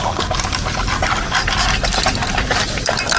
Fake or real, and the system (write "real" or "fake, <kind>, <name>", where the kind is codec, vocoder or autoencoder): real